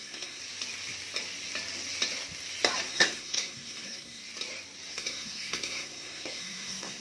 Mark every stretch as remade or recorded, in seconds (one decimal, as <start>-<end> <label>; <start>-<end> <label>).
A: 0.0-0.4 remade; 0.4-2.9 recorded; 2.9-4.2 remade; 4.2-4.9 recorded; 4.9-7.0 remade